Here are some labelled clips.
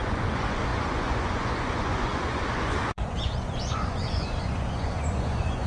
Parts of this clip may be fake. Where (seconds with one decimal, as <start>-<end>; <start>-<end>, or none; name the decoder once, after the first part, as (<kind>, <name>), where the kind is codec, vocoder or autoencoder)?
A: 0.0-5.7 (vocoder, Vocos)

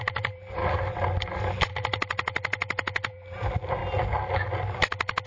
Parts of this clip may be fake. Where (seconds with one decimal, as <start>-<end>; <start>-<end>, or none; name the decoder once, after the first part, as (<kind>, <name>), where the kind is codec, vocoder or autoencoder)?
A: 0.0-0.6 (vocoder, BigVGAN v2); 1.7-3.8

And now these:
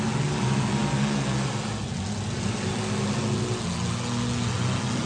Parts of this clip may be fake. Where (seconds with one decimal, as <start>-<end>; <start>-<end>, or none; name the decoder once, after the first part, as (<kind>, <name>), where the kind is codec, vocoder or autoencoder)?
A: none

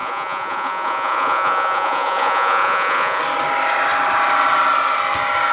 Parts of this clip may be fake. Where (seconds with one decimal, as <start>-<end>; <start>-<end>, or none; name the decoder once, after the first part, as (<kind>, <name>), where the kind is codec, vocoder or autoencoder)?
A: 0.0-3.2 (vocoder, Vocos)